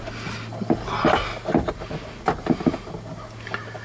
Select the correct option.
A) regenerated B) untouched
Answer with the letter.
B